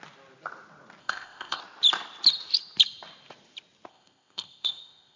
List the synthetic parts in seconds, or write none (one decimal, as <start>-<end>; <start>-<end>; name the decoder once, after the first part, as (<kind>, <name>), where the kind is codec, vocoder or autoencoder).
1.0-1.6 (codec, ZipCodec); 3.9-5.2